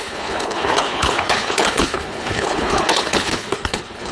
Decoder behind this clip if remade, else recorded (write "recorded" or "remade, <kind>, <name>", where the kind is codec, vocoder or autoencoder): remade, codec, HILCodec